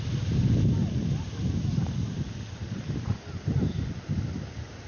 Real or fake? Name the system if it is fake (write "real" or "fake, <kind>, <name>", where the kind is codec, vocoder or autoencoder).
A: real